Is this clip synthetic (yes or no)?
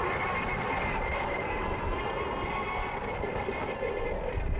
no